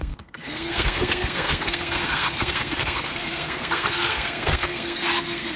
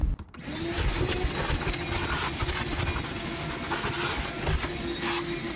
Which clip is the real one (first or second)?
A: second